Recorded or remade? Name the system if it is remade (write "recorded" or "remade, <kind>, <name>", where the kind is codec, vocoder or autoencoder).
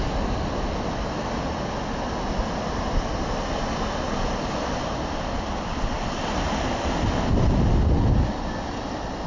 recorded